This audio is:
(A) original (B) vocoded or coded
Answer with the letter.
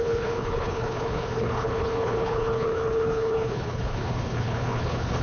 B